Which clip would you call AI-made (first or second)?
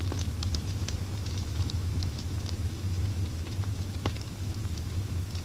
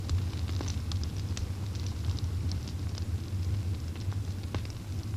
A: first